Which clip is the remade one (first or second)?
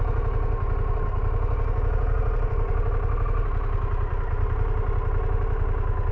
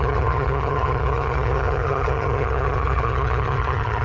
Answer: second